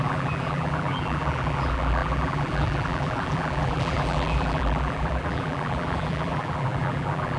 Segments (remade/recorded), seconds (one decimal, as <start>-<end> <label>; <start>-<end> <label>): 0.0-7.4 remade